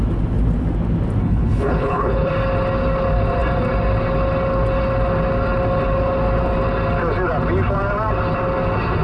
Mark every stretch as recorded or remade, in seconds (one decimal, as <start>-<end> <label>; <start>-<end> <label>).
0.0-1.2 recorded; 1.2-2.3 remade; 2.3-9.0 recorded